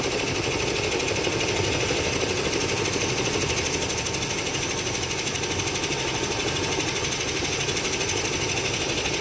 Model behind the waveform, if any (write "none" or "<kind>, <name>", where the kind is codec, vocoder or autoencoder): none